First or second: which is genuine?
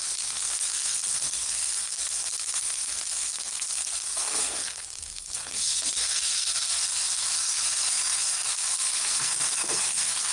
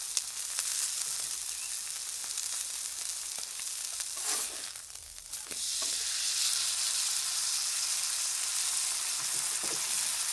second